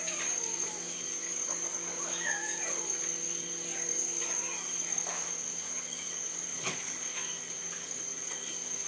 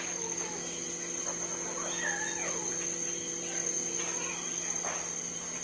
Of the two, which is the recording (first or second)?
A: second